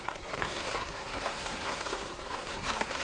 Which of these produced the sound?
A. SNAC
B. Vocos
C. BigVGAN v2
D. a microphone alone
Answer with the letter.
A